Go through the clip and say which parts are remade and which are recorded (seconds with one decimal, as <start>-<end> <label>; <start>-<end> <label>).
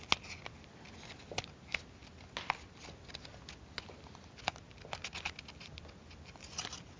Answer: 0.0-7.0 recorded